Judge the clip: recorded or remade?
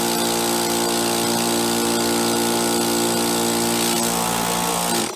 recorded